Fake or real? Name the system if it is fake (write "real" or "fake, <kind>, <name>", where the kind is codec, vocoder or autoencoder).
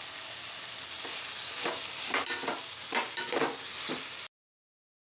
real